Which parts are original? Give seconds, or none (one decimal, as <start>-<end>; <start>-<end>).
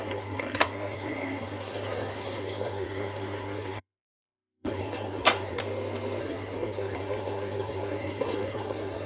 5.6-6.2